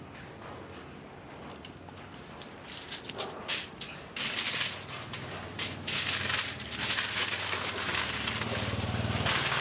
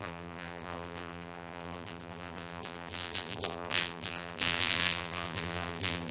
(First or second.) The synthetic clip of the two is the second